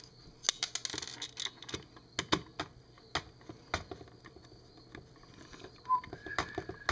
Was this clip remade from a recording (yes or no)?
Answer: no